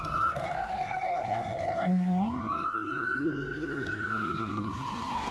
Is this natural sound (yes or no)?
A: no